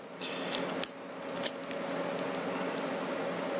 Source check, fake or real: real